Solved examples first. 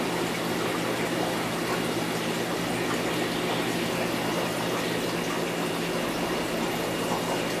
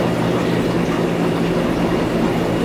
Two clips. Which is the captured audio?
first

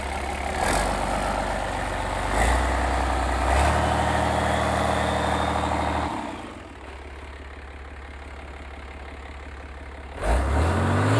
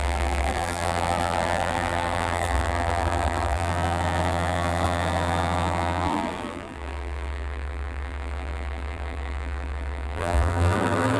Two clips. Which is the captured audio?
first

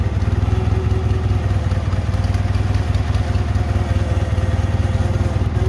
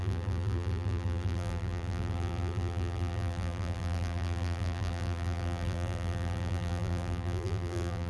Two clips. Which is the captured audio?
first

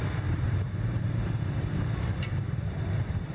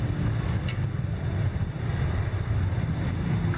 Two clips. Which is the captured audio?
second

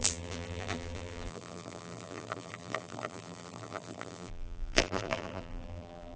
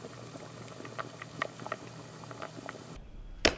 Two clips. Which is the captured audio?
second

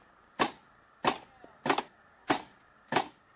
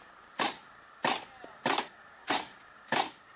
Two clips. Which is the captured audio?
first